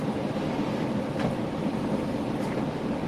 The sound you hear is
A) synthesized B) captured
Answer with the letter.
B